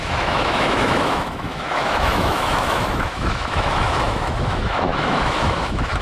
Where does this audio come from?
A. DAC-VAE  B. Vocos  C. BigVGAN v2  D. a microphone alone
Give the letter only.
A